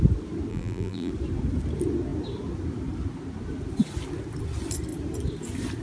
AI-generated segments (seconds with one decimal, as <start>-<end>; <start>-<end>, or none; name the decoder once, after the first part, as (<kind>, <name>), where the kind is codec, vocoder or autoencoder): 0.5-1.1 (vocoder, BigVGAN v2)